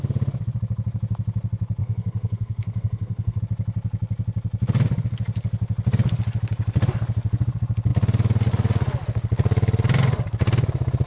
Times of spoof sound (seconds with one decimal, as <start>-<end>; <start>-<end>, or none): 1.8-3.4